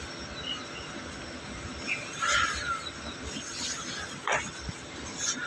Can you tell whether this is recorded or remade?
recorded